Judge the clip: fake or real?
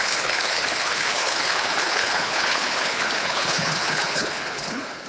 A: fake